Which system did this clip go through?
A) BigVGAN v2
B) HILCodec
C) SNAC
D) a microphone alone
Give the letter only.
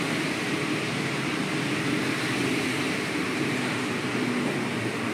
D